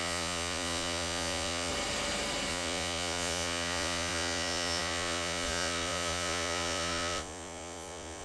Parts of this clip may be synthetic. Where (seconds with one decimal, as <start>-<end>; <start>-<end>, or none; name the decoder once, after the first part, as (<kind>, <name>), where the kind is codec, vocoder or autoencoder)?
0.0-1.7 (vocoder, Vocos); 2.5-8.2